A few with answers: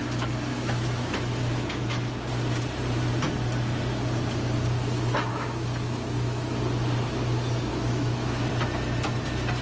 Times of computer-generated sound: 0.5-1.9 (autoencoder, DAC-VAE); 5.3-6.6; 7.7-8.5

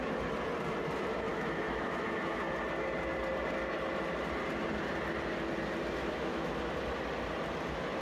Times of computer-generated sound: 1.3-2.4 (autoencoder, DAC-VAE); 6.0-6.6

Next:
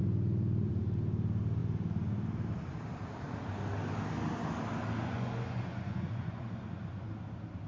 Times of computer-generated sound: 5.0-7.1 (vocoder, Vocos)